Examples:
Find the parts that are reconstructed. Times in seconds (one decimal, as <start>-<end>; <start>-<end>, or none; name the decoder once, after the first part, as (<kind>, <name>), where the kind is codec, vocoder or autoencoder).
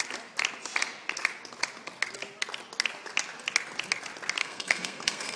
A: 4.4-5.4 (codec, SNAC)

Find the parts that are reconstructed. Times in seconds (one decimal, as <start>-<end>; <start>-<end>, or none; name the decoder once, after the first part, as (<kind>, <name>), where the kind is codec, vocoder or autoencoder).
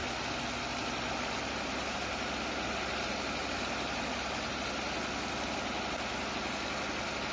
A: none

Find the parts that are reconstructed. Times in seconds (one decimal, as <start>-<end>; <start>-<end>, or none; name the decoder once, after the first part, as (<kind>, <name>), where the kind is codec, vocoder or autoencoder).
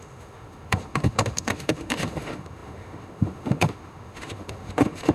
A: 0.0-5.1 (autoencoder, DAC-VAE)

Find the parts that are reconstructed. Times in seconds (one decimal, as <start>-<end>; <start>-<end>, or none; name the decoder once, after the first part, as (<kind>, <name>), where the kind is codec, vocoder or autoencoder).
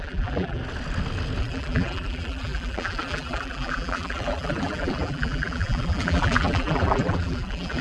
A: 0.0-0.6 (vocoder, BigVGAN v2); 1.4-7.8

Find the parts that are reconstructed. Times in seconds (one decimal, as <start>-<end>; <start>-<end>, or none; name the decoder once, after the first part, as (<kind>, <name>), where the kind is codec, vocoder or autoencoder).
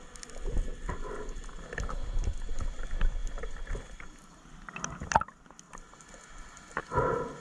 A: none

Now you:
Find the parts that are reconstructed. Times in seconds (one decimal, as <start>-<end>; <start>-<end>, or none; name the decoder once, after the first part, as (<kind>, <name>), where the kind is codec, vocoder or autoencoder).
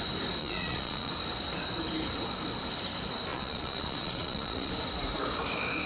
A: 0.4-1.1 (vocoder, Vocos); 3.3-4.7